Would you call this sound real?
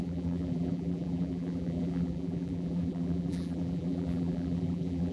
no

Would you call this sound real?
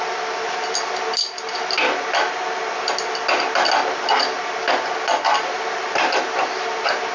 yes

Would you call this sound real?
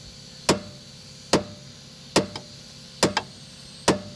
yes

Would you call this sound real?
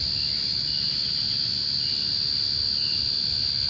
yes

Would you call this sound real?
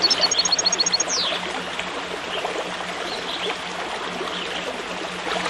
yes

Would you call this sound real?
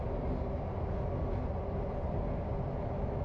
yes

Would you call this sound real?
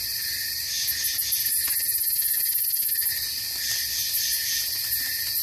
yes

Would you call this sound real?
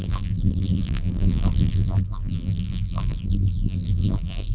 no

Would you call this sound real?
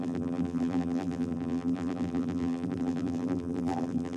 no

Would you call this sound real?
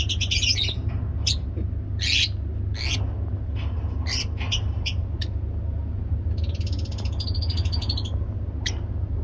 yes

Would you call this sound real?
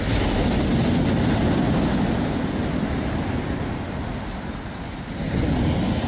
yes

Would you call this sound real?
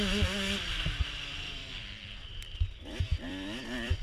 no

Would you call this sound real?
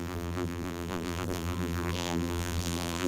no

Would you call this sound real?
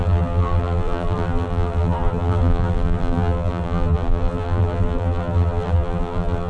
no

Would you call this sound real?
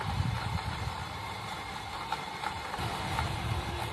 no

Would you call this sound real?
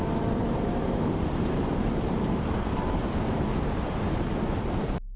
no